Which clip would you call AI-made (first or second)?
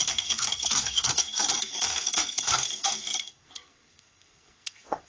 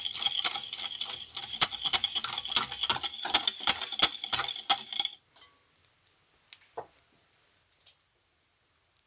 first